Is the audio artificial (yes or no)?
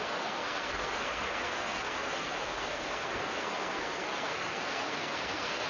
yes